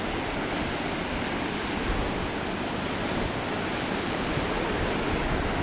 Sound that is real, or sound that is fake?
real